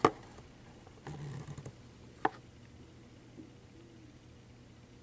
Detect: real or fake real